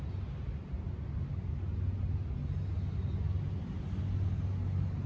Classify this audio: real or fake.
real